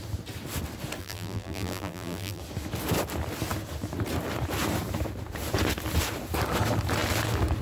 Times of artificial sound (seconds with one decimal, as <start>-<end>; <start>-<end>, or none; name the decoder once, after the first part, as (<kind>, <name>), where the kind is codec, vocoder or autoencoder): 1.0-2.4 (vocoder, BigVGAN v2)